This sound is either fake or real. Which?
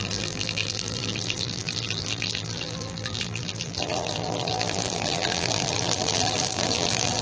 fake